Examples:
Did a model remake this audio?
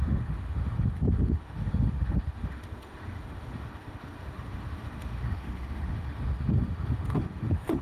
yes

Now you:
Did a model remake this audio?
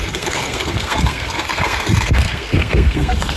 yes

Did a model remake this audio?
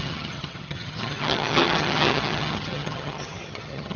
yes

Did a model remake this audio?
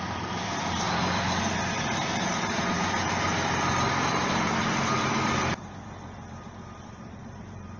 yes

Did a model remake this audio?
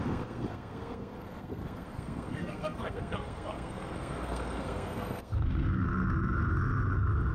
yes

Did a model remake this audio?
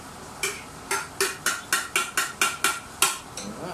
no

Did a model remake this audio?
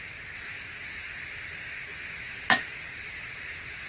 no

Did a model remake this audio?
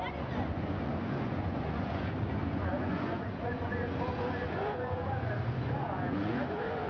yes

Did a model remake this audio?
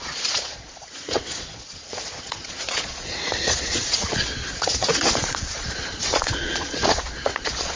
yes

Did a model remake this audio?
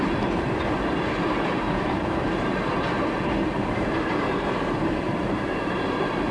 yes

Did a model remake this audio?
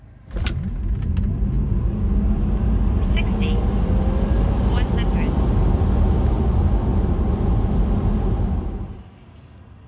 no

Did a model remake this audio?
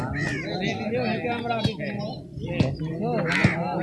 no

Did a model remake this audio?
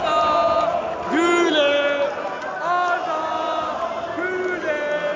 no